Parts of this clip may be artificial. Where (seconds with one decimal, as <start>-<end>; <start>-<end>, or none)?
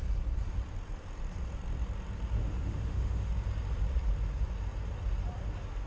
2.4-3.3